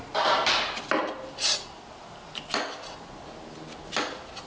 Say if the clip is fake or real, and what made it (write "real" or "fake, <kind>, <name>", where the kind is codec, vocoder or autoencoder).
real